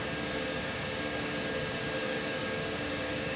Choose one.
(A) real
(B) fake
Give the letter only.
B